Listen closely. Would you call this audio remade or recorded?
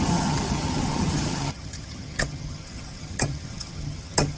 remade